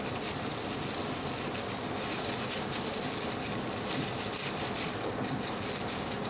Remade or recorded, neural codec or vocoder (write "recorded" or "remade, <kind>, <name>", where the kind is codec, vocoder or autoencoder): recorded